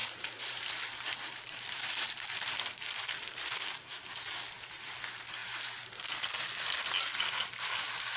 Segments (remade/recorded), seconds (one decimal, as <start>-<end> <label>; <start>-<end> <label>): 0.0-2.5 remade; 2.5-8.2 recorded